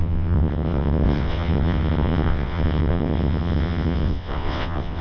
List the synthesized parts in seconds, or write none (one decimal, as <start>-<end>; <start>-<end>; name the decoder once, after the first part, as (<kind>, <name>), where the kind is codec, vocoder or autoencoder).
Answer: 0.0-5.0 (vocoder, WaveNeXt)